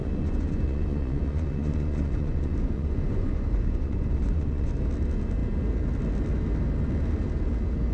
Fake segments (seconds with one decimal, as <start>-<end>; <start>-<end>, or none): 0.0-4.7